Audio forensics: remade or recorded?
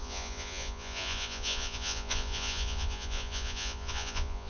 remade